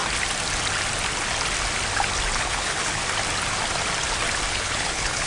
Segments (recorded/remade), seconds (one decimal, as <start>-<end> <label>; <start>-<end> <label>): 0.0-2.4 recorded; 2.4-3.0 remade; 3.0-4.5 recorded; 4.5-5.3 remade